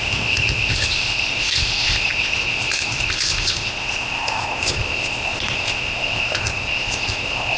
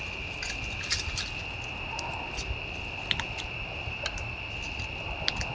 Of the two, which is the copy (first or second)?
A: first